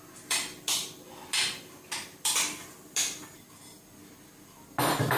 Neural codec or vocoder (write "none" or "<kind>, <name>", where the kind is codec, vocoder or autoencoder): none